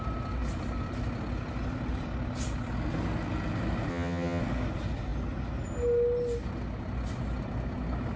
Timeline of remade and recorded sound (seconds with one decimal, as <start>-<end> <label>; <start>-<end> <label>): 0.0-3.9 recorded; 3.9-4.4 remade; 4.4-8.2 recorded